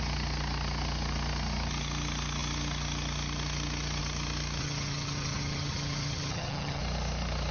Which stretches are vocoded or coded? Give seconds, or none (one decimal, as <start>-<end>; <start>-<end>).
4.6-6.8